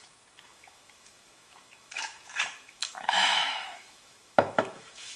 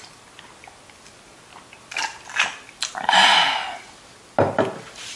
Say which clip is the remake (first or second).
first